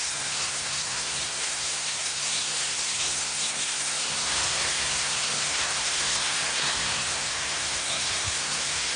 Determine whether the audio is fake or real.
fake